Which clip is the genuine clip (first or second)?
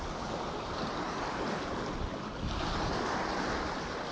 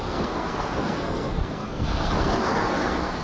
first